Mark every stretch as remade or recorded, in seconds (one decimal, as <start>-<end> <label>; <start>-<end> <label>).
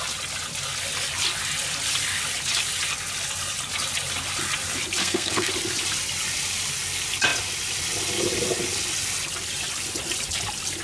0.0-5.0 recorded; 5.0-5.5 remade; 5.5-10.8 recorded